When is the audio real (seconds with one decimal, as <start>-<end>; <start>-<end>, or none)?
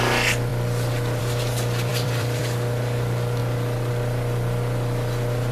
0.0-1.9; 2.4-5.5